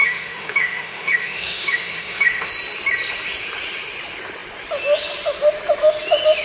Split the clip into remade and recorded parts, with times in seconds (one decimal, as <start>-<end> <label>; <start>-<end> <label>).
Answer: 0.0-2.5 remade; 2.5-6.4 recorded